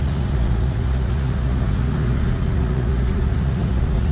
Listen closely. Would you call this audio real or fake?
fake